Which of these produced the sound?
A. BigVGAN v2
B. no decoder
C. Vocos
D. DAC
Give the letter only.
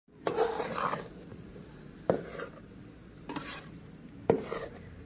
A